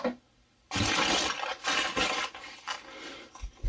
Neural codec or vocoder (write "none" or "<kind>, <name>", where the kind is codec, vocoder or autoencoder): none